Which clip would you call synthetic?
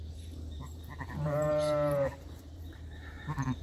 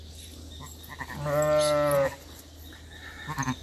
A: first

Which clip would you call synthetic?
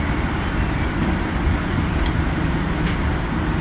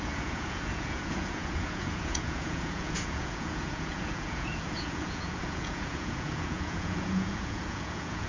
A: second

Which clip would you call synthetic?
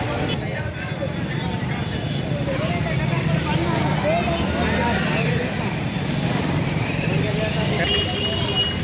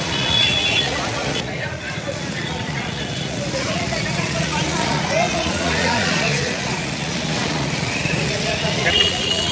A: second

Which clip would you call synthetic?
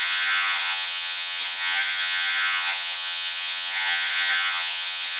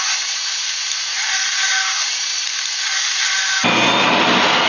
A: first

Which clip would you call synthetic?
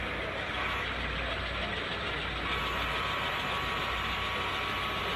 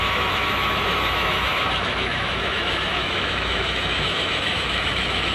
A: second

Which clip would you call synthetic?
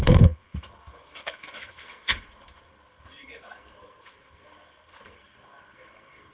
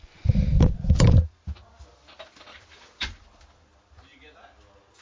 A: first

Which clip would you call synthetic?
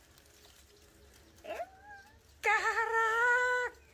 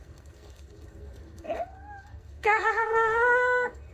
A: second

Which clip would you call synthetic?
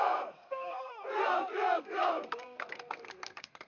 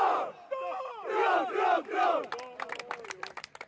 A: first